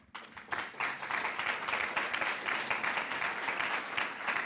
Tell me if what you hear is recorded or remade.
recorded